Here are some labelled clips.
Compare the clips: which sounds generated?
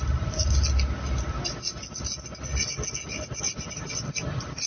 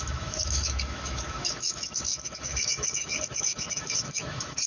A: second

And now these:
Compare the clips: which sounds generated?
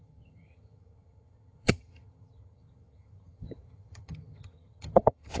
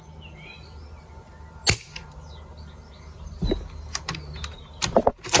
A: first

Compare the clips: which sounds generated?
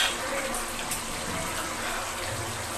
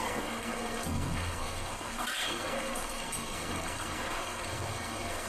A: second